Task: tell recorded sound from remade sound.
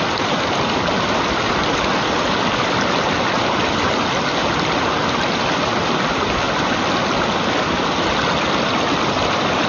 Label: recorded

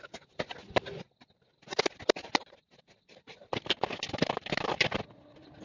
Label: recorded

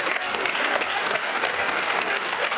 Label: remade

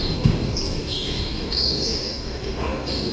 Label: remade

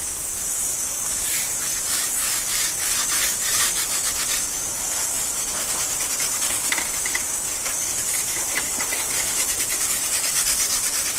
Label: remade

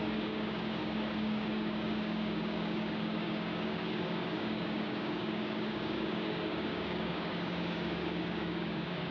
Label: remade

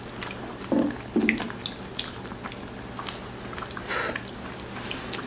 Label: recorded